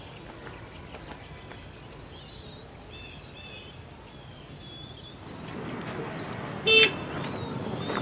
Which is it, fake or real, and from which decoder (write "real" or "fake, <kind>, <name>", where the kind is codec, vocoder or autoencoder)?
real